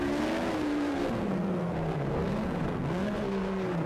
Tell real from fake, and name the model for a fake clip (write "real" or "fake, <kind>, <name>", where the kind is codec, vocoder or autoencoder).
fake, codec, SNAC